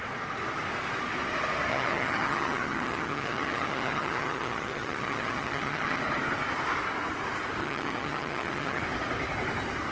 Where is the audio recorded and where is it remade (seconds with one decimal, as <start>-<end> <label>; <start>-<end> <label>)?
0.0-1.7 recorded; 1.7-6.0 remade; 6.0-7.6 recorded; 7.6-8.8 remade; 8.8-9.9 recorded

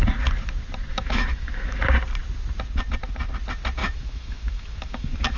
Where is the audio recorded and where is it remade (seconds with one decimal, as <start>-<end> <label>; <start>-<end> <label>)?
0.0-0.9 recorded; 0.9-1.8 remade; 1.8-3.8 recorded; 3.8-5.4 remade

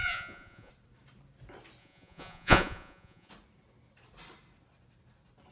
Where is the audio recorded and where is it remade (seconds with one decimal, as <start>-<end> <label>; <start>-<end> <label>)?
0.0-0.7 remade; 0.7-1.8 recorded; 1.8-3.3 remade; 3.3-5.5 recorded

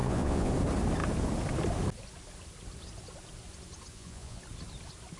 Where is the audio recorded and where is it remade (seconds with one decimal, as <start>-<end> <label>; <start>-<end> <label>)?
0.0-0.5 remade; 0.5-3.9 recorded; 3.9-4.4 remade; 4.4-5.2 recorded

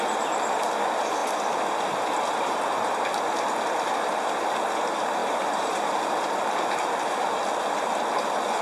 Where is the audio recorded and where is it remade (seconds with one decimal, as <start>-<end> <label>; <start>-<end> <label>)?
0.0-5.2 recorded; 5.2-7.4 remade; 7.4-8.6 recorded